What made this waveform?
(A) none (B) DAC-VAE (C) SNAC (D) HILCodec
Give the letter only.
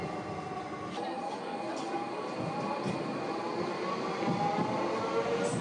A